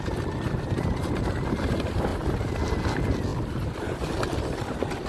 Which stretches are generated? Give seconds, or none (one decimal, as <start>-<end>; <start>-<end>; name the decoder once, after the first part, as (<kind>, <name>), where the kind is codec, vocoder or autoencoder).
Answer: none